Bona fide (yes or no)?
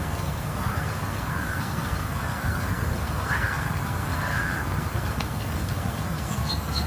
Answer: no